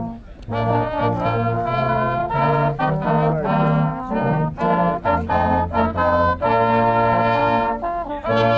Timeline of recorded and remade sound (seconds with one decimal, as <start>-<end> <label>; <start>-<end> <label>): 0.0-2.2 recorded; 2.2-2.8 remade; 2.8-8.6 recorded